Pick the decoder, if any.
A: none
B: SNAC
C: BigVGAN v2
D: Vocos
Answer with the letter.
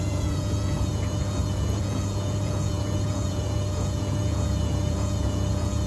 D